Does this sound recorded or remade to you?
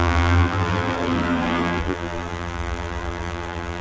remade